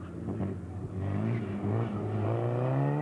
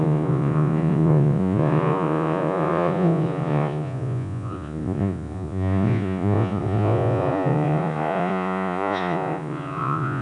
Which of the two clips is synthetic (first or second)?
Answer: second